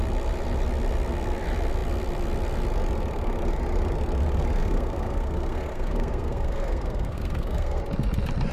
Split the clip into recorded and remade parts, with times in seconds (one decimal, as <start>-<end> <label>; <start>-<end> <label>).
0.0-4.6 recorded; 4.6-7.8 remade; 7.8-8.5 recorded